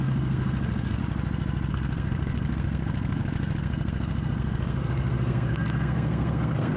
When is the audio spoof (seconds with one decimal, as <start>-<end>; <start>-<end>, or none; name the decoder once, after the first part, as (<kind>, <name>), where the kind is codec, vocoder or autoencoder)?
0.0-1.0 (codec, SNAC); 1.7-6.8